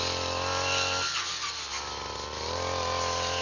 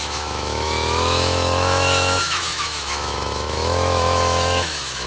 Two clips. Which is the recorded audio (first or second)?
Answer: first